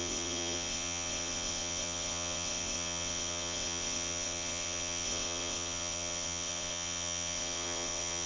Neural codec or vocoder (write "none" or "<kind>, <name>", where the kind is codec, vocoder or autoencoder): vocoder, WaveNeXt